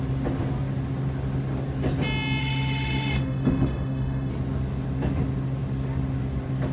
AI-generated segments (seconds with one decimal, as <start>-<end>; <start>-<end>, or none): 2.4-4.3